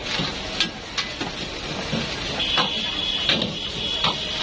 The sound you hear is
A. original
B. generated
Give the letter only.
A